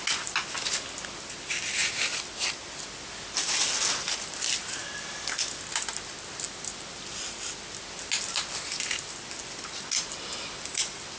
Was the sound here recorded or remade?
recorded